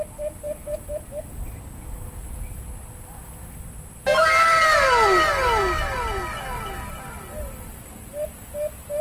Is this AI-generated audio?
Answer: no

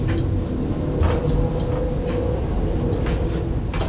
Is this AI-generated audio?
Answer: no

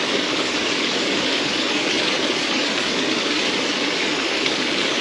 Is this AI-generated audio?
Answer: yes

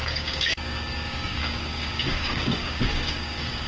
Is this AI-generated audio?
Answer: yes